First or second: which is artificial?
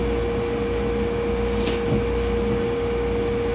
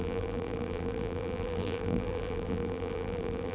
second